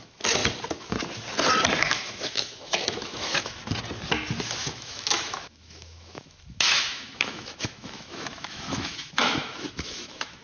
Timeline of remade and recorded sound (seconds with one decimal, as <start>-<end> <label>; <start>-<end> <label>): 0.0-0.4 remade; 0.4-1.8 recorded; 1.8-3.6 remade; 3.6-4.6 recorded; 4.6-10.4 remade